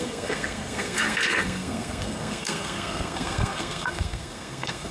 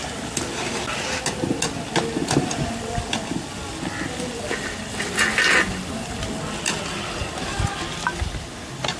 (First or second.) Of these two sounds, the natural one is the second